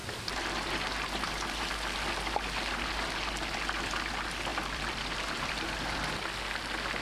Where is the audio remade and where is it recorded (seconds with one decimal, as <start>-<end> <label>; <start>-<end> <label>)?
0.0-4.5 recorded; 4.5-6.1 remade; 6.1-7.0 recorded